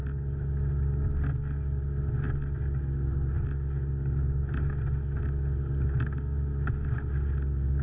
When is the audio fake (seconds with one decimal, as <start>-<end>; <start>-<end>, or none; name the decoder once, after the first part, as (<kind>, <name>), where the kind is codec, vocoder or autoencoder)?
none